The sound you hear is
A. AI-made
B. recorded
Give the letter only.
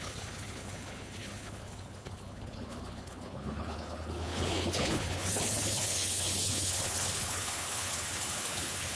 A